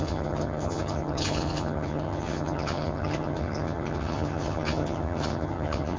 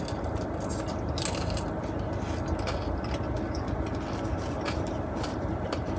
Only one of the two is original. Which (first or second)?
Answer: second